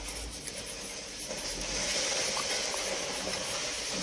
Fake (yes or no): no